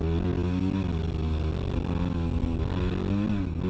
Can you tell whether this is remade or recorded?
recorded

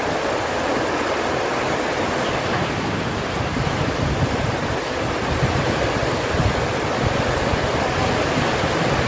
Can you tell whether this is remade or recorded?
recorded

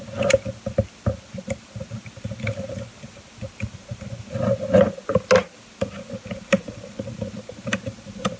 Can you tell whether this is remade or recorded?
recorded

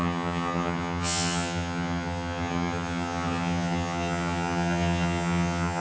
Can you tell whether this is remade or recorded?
remade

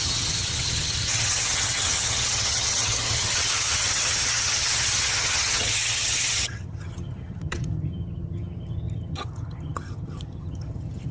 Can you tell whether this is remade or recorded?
remade